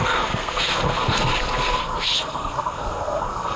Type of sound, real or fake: fake